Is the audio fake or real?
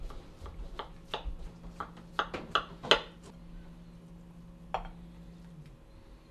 real